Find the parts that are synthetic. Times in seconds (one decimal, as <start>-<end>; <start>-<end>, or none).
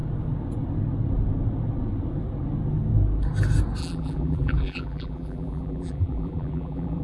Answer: 3.8-7.0